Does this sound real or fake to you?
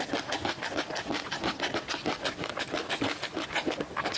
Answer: real